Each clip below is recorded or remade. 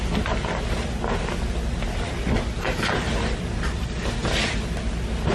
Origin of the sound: recorded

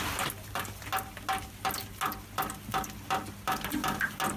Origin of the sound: recorded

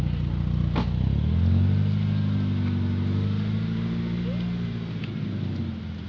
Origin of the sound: recorded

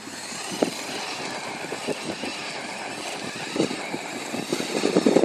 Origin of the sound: recorded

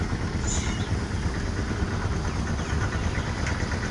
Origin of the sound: recorded